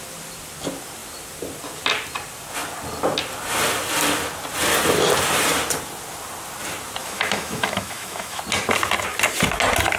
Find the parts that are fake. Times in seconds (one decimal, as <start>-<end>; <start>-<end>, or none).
7.0-8.4